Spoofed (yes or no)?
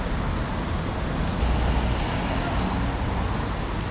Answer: no